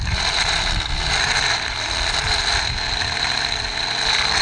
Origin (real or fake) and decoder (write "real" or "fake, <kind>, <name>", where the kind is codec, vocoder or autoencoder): real